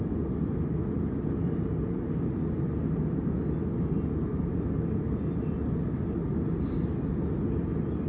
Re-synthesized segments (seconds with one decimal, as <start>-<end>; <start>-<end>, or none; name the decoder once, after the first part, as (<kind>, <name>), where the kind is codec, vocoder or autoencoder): none